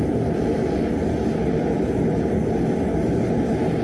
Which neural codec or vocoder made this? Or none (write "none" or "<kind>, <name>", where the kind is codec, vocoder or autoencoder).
none